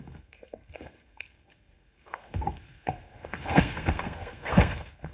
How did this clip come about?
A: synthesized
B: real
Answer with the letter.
A